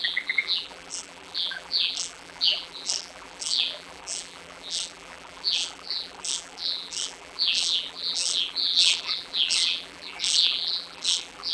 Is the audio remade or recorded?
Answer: remade